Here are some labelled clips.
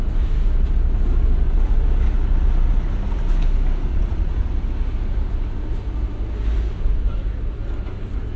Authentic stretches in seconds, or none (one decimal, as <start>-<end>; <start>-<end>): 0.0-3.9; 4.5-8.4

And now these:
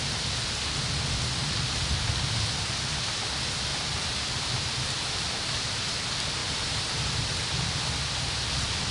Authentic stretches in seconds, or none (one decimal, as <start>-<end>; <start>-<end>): 0.0-1.4; 2.1-3.7; 5.8-6.4; 7.2-8.9

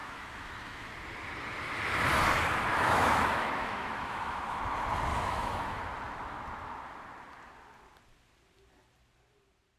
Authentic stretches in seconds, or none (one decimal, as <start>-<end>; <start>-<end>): 0.9-2.7; 4.6-5.1; 5.8-9.8

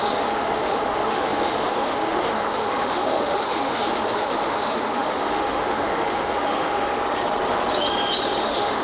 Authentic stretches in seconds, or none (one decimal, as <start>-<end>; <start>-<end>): 6.9-8.4

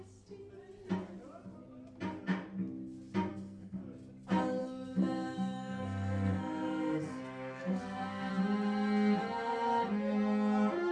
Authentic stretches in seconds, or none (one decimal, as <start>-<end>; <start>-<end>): 0.0-3.3; 3.8-4.6; 8.3-10.9

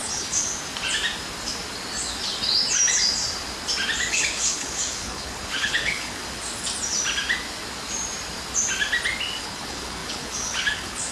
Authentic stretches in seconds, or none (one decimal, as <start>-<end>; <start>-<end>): 0.5-4.1; 6.2-9.4